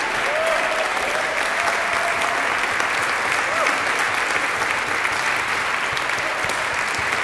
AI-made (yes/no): no